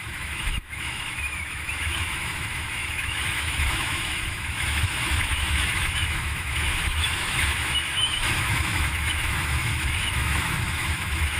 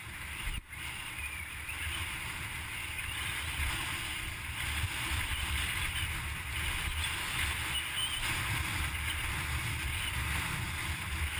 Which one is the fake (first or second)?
first